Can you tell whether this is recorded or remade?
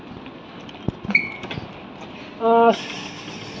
recorded